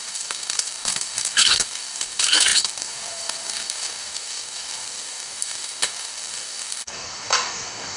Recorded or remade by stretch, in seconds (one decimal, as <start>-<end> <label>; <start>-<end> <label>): 0.0-8.0 remade